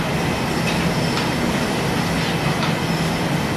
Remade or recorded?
recorded